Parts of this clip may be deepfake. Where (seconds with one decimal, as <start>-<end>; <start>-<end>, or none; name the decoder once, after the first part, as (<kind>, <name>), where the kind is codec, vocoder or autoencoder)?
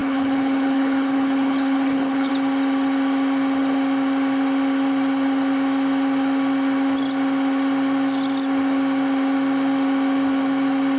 0.0-2.3 (codec, HILCodec)